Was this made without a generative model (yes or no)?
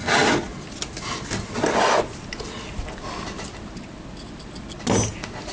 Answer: yes